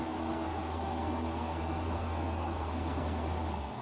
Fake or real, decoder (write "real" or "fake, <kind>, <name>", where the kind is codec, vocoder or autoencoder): fake, codec, SNAC